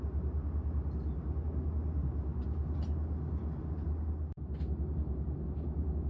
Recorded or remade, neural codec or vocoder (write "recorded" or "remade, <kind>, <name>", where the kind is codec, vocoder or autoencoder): recorded